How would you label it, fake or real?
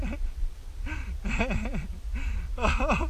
real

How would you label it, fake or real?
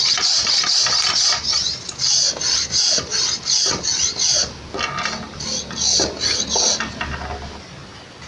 real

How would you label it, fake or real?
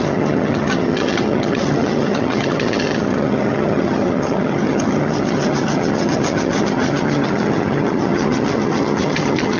fake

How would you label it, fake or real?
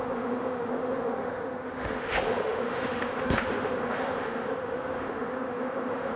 fake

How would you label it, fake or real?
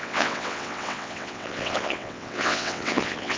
fake